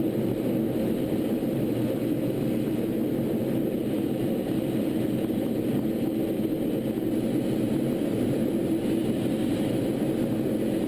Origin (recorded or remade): recorded